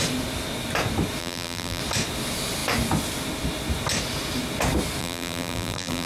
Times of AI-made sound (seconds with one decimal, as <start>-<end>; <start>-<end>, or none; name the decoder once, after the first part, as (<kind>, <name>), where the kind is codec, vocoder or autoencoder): 1.2-1.8 (vocoder, BigVGAN v2); 5.0-6.1